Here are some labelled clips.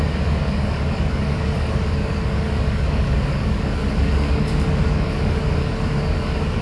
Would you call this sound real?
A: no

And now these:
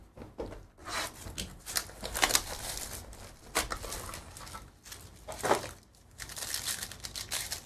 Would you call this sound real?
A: yes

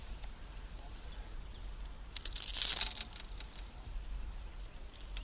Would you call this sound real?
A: yes